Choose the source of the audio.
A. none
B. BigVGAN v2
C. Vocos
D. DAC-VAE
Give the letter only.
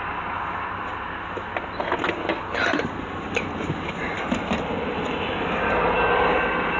A